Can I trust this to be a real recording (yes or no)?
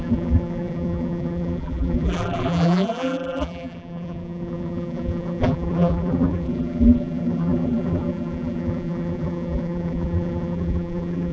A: no